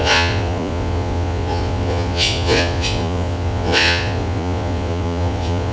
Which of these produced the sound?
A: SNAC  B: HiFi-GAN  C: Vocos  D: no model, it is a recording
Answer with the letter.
C